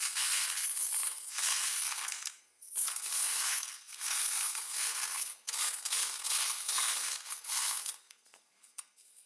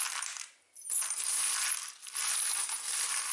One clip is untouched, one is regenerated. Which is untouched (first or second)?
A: second